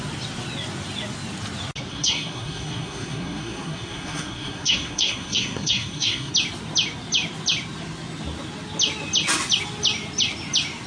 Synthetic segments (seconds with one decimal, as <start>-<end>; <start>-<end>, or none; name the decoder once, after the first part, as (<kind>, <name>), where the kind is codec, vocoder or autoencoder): 1.9-6.3 (codec, SNAC)